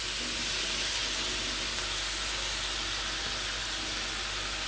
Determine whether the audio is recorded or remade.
recorded